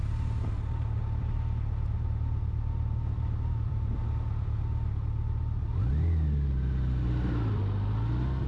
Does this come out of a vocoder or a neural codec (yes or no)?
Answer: no